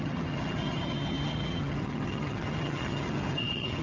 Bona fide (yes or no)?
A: no